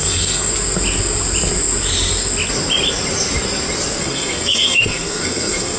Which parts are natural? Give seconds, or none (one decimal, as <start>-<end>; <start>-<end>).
0.5-4.0